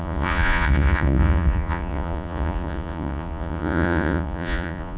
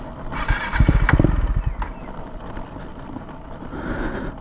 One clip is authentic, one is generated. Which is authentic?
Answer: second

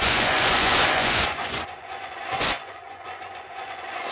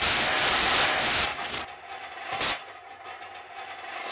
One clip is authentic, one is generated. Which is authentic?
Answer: second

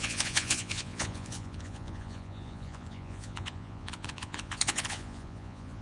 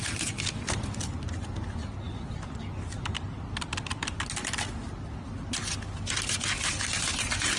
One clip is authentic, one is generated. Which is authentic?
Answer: second